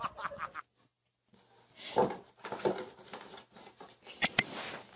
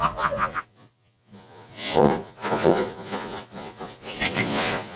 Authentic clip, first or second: first